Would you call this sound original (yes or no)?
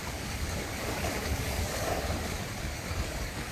no